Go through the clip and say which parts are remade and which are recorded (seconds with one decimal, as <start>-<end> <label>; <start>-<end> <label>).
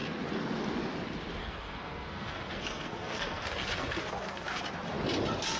0.0-1.4 recorded; 1.4-4.6 remade; 4.6-5.6 recorded